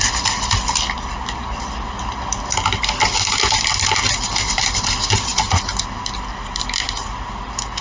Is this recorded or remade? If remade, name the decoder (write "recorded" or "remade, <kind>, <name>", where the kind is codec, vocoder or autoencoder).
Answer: remade, vocoder, BigVGAN v2